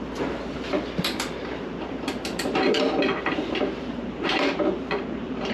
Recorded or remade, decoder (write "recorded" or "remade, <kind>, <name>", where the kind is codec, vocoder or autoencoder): remade, vocoder, BigVGAN v2